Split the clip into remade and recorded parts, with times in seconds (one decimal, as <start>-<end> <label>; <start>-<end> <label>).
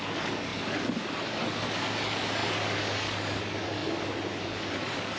0.0-5.2 remade